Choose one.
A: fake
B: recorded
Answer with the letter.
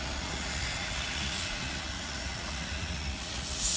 A